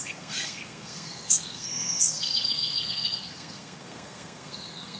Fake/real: fake